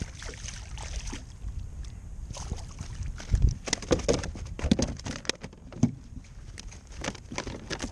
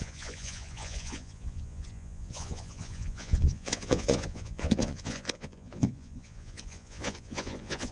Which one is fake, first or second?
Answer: second